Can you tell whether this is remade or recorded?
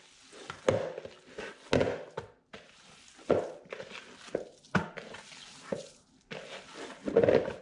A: recorded